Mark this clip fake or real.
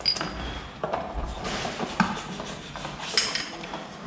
real